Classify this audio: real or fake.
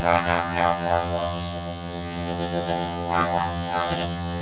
fake